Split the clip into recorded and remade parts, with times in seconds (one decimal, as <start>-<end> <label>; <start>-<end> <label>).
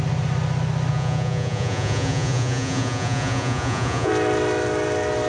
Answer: 0.0-0.9 recorded; 0.9-4.1 remade; 4.1-5.3 recorded